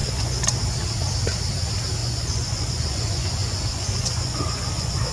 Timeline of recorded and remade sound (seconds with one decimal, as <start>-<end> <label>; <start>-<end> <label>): 0.0-0.6 remade; 0.6-2.0 recorded; 2.0-5.1 remade